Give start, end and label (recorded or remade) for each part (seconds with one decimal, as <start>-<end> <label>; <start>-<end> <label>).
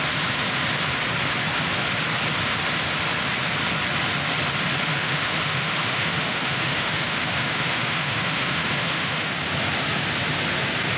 0.0-4.9 recorded; 4.9-9.3 remade; 9.3-11.0 recorded